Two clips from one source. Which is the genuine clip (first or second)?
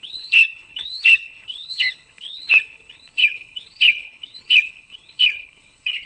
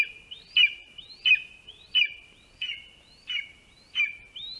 second